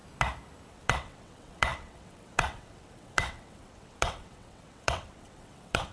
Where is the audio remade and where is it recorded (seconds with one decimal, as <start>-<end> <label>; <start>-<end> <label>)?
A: 0.0-0.7 recorded; 0.7-5.9 remade